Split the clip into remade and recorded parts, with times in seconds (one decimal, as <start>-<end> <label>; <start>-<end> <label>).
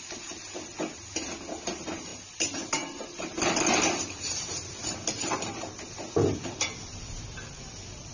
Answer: 0.0-8.1 recorded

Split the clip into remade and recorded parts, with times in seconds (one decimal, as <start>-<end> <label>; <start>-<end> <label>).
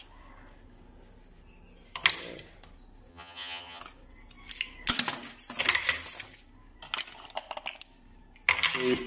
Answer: 0.0-3.1 recorded; 3.1-3.8 remade; 3.8-9.1 recorded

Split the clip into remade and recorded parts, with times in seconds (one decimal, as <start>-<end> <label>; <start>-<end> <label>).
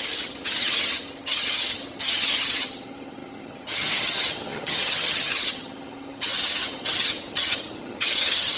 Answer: 0.0-8.6 remade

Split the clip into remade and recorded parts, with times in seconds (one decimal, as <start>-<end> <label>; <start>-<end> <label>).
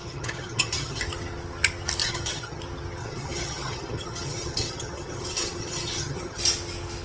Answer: 0.0-1.0 remade; 1.0-2.0 recorded; 2.0-2.6 remade; 2.6-3.0 recorded; 3.0-6.4 remade; 6.4-7.0 recorded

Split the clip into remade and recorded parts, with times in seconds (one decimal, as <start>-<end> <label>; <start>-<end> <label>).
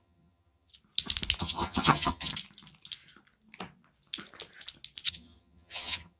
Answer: 0.0-0.7 remade; 0.7-1.4 recorded; 1.4-2.3 remade; 2.3-5.1 recorded; 5.1-6.2 remade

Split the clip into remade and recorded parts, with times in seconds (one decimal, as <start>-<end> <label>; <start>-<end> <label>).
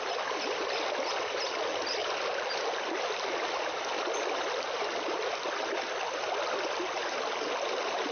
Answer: 0.0-8.1 recorded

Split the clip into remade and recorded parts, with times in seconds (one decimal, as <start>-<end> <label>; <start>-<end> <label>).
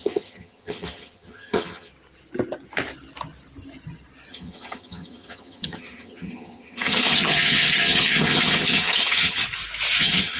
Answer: 0.0-1.9 remade; 1.9-4.3 recorded; 4.3-9.4 remade; 9.4-10.0 recorded; 10.0-10.4 remade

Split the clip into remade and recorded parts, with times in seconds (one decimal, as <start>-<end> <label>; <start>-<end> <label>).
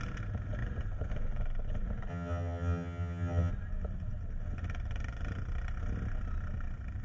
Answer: 0.0-2.1 recorded; 2.1-3.5 remade; 3.5-7.0 recorded